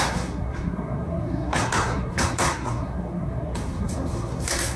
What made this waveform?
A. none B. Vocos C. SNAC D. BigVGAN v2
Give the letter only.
C